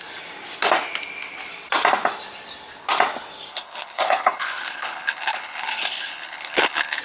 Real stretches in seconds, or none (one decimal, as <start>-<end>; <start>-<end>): 0.0-3.5